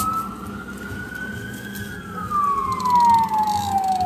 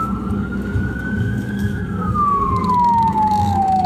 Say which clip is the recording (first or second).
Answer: first